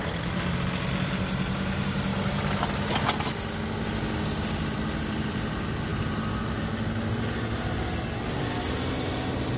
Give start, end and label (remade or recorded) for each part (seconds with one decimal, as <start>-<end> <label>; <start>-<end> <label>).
0.0-9.6 recorded